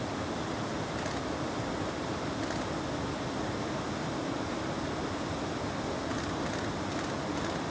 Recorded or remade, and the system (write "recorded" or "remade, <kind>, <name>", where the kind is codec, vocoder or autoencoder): recorded